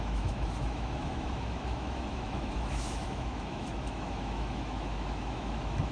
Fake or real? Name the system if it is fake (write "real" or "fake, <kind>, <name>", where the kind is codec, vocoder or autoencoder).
fake, autoencoder, DAC-VAE